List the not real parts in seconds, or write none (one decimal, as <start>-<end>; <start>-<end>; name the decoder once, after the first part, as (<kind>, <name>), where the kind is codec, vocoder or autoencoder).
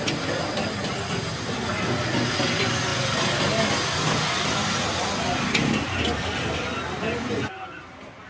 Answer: none